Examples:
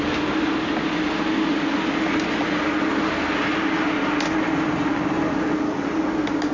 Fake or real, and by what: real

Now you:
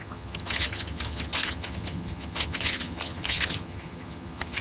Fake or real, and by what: fake, vocoder, HiFi-GAN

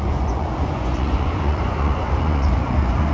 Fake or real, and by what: fake, vocoder, Vocos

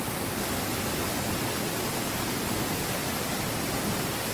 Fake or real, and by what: real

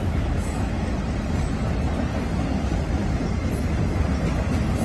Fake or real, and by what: real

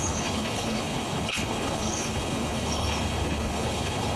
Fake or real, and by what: fake, codec, HILCodec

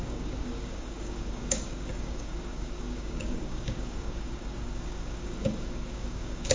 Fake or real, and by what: fake, codec, DAC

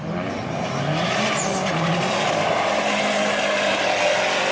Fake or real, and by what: real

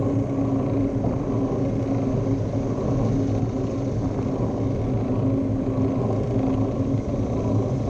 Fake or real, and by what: real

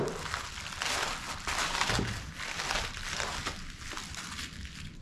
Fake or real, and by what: real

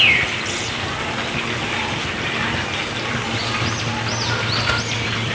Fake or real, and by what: real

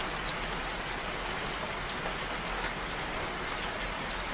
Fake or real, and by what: real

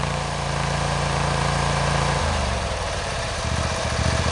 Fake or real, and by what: fake, vocoder, BigVGAN v2